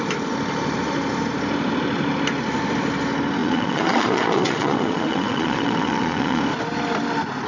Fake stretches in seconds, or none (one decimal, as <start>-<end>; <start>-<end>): 3.4-6.4

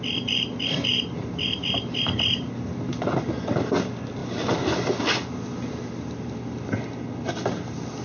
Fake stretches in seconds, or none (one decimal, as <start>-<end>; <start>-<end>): 0.9-2.5

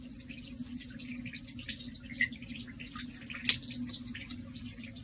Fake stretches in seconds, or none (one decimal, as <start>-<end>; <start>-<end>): none

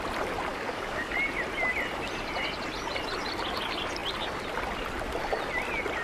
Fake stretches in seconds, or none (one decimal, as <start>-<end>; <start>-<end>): 0.5-1.1

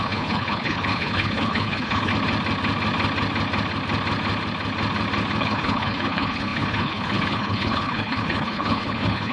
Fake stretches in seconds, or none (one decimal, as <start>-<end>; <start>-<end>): 0.0-2.1; 5.4-9.3

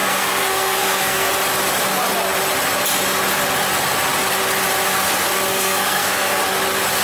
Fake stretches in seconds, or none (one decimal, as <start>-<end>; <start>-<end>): 0.0-1.3; 5.5-6.4

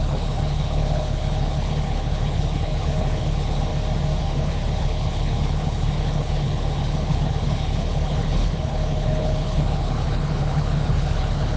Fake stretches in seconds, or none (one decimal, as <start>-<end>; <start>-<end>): 0.0-3.7; 4.2-11.6